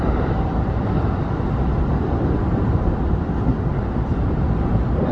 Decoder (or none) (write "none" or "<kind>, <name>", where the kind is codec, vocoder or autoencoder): vocoder, BigVGAN v2